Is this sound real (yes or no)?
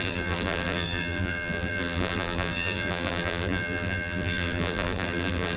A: no